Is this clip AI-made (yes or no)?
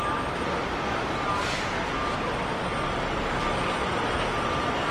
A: no